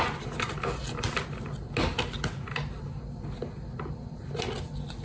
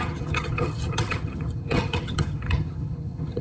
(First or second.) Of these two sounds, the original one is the first